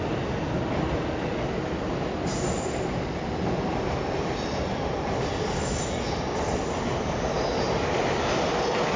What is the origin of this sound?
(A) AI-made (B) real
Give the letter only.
B